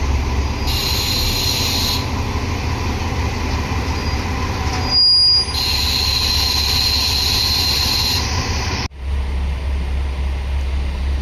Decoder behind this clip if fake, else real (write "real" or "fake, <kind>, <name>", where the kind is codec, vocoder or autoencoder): real